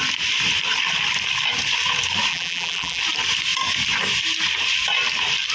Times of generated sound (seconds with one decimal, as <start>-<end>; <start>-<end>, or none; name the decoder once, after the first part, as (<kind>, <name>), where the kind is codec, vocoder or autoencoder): 2.3-3.0 (vocoder, BigVGAN v2)